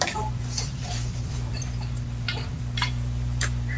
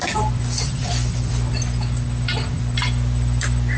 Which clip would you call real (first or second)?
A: second